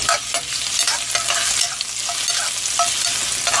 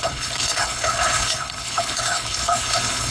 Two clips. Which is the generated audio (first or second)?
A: second